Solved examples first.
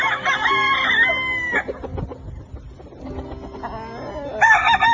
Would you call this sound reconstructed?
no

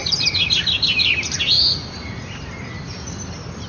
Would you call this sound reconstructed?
yes